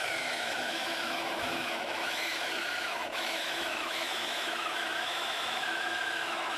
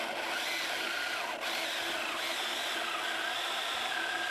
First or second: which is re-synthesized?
first